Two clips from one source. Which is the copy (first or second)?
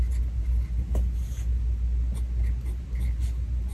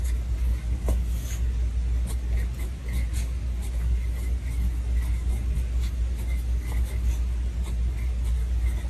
second